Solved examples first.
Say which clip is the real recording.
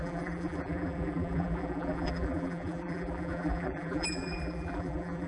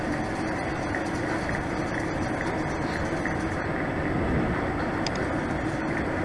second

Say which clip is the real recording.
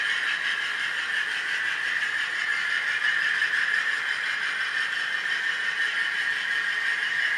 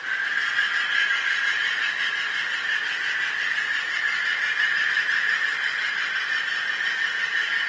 first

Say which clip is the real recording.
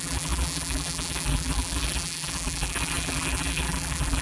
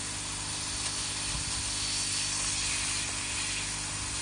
second